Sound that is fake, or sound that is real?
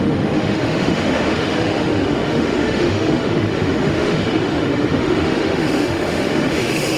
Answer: fake